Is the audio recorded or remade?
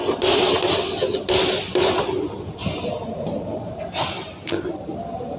recorded